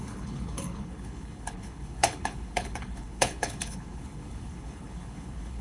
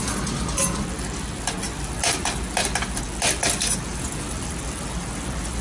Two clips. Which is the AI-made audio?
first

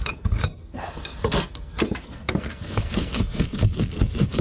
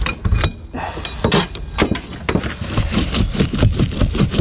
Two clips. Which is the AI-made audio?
first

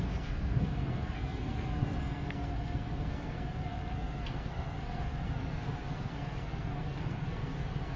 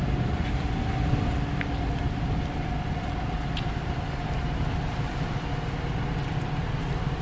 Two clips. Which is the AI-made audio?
first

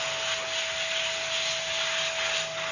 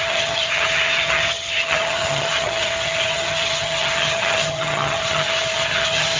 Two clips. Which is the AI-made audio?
second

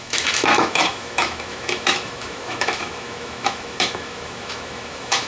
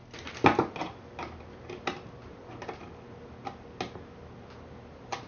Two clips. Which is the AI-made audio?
first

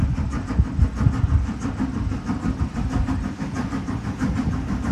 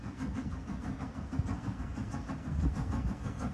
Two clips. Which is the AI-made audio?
second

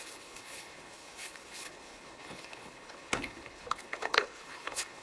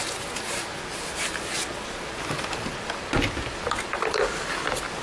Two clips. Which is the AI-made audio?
first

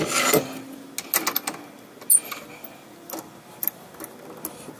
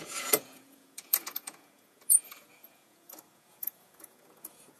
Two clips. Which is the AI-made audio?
second